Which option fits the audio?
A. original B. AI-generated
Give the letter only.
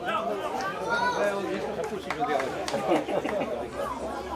A